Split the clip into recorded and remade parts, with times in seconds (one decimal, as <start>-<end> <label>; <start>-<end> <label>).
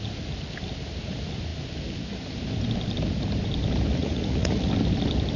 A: 0.0-4.0 recorded; 4.0-4.7 remade; 4.7-5.4 recorded